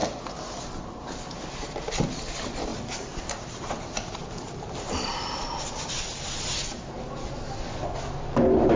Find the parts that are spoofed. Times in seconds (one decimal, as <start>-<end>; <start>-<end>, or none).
2.7-5.6